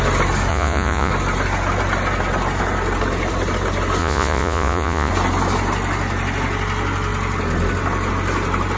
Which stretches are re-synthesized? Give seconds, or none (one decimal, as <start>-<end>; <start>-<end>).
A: 0.5-1.1; 4.0-5.1